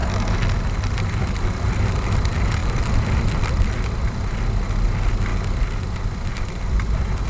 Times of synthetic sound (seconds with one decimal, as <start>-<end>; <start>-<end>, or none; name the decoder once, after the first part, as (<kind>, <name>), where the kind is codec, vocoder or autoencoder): none